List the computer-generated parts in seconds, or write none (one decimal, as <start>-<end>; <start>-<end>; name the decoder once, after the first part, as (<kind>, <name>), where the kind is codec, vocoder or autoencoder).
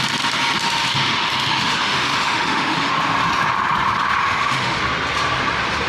0.6-2.9 (autoencoder, DAC-VAE); 4.2-4.8